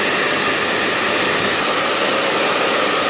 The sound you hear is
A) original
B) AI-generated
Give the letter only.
A